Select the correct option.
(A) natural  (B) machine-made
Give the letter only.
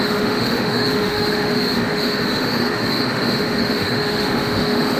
B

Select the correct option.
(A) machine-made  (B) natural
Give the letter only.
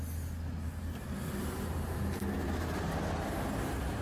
B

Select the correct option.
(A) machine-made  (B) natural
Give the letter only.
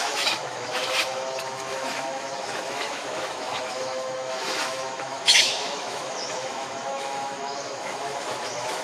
A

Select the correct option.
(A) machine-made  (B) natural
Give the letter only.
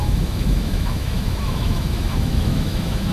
A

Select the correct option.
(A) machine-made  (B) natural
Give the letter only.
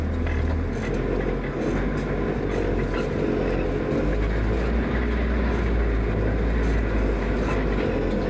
B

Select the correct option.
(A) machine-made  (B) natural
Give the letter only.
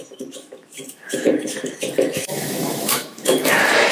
A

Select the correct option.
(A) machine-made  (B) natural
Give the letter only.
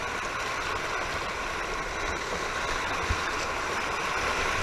B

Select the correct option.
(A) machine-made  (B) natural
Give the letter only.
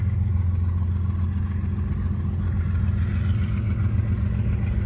B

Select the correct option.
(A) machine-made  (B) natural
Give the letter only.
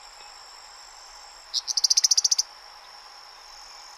B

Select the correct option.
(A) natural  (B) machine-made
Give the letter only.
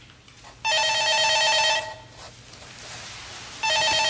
A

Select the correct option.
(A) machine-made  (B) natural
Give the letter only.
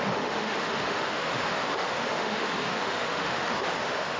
A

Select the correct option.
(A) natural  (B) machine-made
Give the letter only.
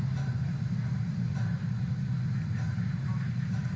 A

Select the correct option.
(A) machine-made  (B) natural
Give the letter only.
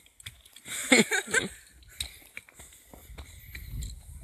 B